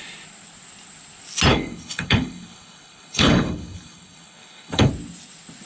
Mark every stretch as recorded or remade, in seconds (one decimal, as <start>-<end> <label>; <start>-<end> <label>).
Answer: 0.0-1.5 recorded; 1.5-4.9 remade; 4.9-5.7 recorded